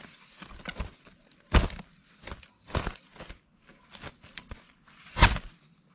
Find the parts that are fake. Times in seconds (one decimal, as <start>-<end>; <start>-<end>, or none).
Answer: 3.7-4.7